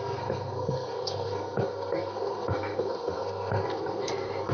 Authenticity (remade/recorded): remade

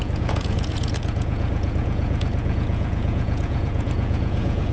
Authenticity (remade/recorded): remade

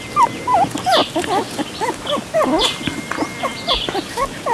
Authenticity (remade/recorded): recorded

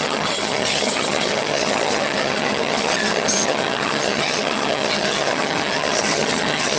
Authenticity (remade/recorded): remade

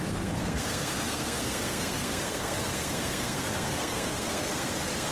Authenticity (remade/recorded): remade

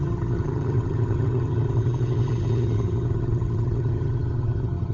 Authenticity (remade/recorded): remade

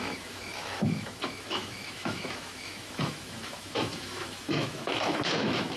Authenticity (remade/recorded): remade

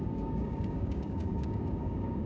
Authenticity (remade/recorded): remade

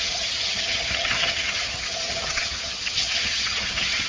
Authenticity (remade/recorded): remade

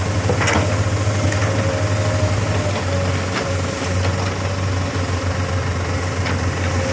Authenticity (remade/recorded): recorded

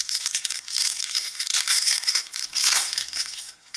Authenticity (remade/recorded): remade